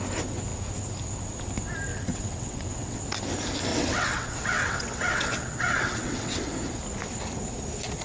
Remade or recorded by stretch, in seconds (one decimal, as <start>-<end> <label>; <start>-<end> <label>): 0.0-1.9 recorded; 1.9-3.0 remade; 3.0-3.7 recorded; 3.7-6.4 remade; 6.4-8.0 recorded